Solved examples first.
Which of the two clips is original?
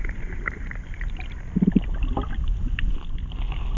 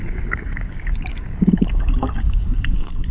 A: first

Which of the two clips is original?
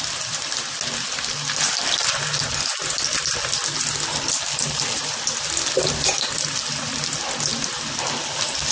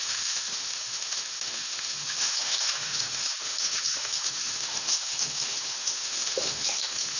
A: first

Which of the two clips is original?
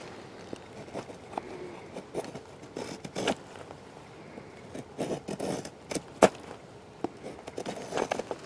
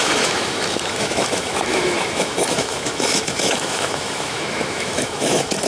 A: first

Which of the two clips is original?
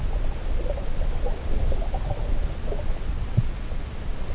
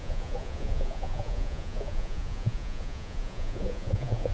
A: first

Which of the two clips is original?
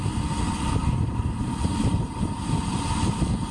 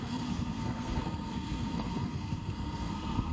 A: first